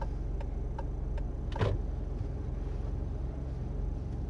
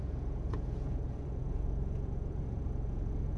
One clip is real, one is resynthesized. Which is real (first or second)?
first